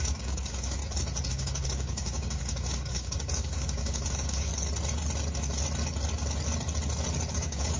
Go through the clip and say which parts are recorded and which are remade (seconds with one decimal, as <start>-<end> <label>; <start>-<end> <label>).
0.0-0.8 remade; 0.8-1.3 recorded; 1.3-4.5 remade; 4.5-7.3 recorded; 7.3-7.8 remade